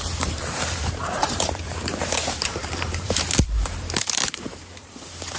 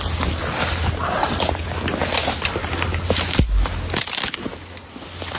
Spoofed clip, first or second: first